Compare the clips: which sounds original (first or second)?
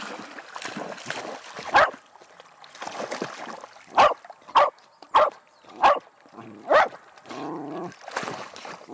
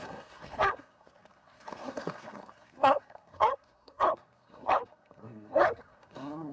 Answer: first